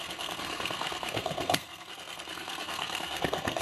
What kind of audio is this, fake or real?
fake